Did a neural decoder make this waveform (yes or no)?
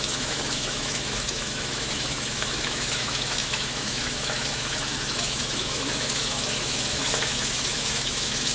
yes